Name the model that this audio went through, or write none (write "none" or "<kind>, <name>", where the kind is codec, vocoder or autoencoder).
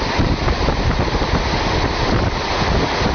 none